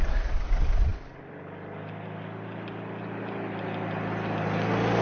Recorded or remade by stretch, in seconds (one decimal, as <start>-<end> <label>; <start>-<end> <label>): 0.0-5.0 recorded